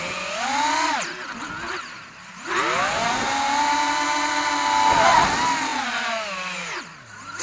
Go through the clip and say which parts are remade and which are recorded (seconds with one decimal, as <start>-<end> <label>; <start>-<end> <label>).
0.0-7.4 recorded